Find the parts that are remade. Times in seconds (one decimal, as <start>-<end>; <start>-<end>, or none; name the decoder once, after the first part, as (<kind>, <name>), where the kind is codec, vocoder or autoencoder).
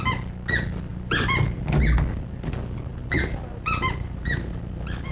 0.9-1.6 (vocoder, BigVGAN v2); 2.9-4.6